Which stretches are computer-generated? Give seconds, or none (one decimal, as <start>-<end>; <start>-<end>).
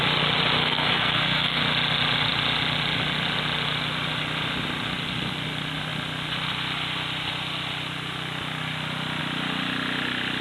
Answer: 0.6-1.6